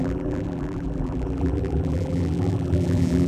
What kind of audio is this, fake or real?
fake